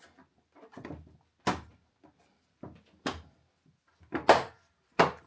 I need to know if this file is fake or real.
real